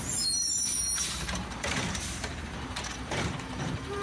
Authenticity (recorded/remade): remade